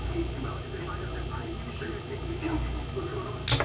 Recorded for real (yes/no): yes